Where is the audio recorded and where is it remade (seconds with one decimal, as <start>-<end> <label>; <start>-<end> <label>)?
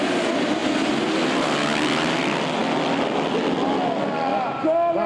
0.0-5.1 recorded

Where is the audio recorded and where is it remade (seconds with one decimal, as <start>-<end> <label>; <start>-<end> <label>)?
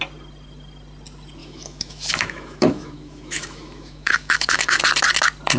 0.0-1.4 recorded; 1.4-4.8 remade; 4.8-5.6 recorded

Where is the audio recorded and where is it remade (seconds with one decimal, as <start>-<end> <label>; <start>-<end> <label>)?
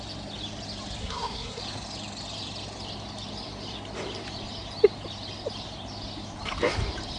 0.0-1.0 recorded; 1.0-1.6 remade; 1.6-7.2 recorded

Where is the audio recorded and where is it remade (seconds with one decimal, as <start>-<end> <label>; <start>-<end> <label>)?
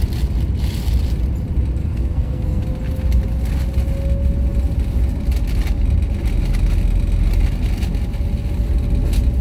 0.0-1.8 recorded; 1.8-2.6 remade; 2.6-9.4 recorded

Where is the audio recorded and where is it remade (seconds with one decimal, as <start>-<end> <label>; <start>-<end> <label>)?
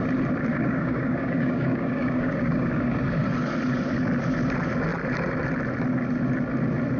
0.0-0.5 recorded; 0.5-2.7 remade; 2.7-7.0 recorded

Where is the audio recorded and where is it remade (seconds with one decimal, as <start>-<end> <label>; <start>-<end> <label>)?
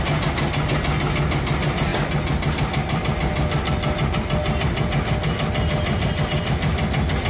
0.0-7.3 recorded